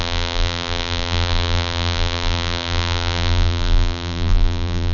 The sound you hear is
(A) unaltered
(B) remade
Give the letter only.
B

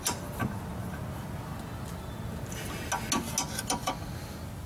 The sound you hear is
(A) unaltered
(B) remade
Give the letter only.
A